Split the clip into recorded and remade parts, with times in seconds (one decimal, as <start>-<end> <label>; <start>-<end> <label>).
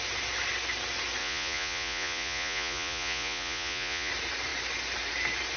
0.0-1.2 recorded; 1.2-4.1 remade; 4.1-5.6 recorded